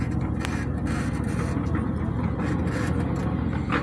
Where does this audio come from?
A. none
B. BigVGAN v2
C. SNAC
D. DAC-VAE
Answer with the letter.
A